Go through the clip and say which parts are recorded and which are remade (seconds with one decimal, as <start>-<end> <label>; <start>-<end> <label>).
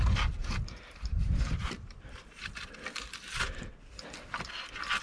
0.0-0.4 recorded; 0.4-3.4 remade; 3.4-5.0 recorded